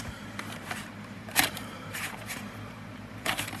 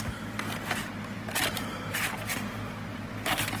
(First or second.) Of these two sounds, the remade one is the first